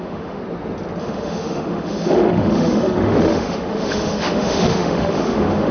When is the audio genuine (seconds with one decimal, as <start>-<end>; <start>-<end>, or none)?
0.4-1.0